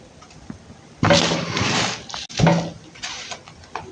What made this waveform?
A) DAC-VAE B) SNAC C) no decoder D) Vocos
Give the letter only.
C